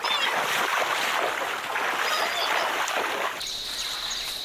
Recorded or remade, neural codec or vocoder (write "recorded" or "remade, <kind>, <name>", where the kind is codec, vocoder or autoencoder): recorded